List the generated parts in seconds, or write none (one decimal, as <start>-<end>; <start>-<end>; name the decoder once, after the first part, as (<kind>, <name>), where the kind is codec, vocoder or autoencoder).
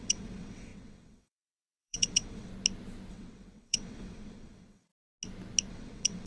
0.0-2.5 (vocoder, WaveNeXt); 3.1-4.9; 5.7-6.3